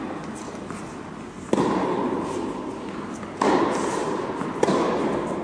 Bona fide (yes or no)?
yes